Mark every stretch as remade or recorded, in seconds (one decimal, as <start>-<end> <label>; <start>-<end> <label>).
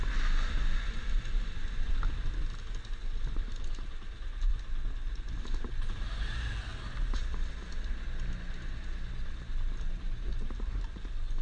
0.0-11.4 recorded